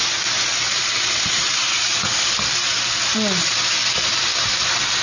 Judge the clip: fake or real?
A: real